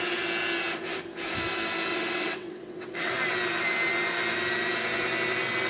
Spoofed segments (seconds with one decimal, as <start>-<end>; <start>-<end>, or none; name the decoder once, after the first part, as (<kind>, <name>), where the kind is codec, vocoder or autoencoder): 1.9-3.1 (vocoder, WaveNeXt)